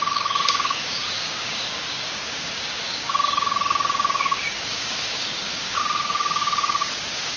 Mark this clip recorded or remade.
remade